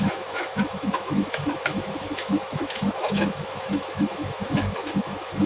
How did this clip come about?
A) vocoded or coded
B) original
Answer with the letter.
A